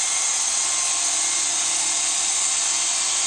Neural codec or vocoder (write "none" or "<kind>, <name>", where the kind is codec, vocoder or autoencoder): none